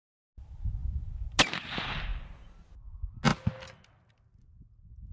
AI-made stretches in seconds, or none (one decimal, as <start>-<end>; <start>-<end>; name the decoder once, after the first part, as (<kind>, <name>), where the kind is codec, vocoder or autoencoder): 2.1-2.7 (vocoder, BigVGAN v2)